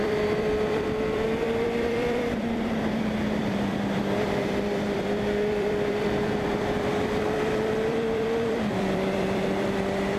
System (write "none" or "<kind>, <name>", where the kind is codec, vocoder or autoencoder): vocoder, BigVGAN v2